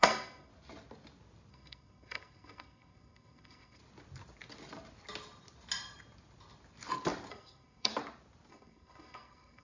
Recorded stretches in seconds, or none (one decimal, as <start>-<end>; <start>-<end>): 0.5-1.5; 3.8-7.3; 7.9-8.5